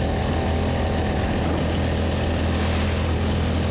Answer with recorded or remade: recorded